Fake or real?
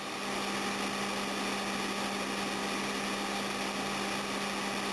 real